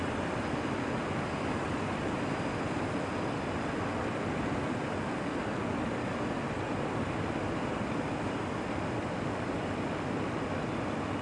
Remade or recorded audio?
recorded